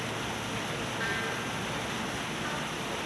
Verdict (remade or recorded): recorded